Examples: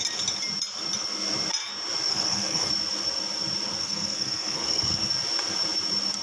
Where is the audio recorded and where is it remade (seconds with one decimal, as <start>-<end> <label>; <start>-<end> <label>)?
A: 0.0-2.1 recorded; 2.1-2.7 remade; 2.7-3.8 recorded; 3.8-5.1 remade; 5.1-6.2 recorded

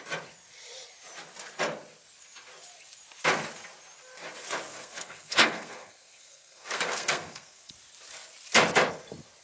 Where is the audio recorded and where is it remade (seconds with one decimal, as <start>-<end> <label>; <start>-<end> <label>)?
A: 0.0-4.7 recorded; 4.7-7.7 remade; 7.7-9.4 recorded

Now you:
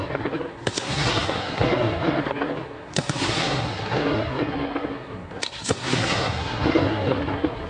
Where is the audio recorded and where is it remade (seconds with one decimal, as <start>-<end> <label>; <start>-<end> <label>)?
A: 0.0-7.7 remade

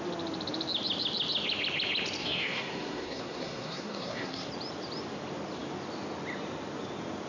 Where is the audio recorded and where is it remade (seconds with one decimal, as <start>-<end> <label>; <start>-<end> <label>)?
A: 0.0-2.2 recorded; 2.2-4.5 remade; 4.5-7.3 recorded

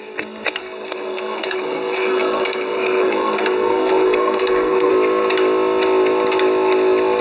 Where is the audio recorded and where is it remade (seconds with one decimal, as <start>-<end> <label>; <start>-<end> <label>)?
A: 0.0-0.6 recorded; 0.6-4.9 remade; 4.9-7.2 recorded

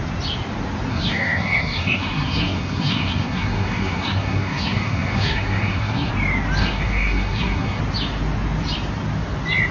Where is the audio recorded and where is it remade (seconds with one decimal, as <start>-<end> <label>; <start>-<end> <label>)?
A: 0.0-0.9 recorded; 0.9-6.1 remade; 6.1-6.6 recorded; 6.6-7.8 remade; 7.8-9.7 recorded

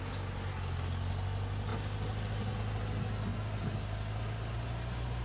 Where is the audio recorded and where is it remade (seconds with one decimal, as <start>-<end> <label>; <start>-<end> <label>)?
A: 0.0-5.2 recorded